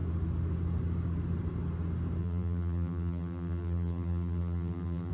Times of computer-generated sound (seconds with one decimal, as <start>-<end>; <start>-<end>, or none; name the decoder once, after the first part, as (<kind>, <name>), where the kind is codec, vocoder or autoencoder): 2.2-5.1 (vocoder, BigVGAN v2)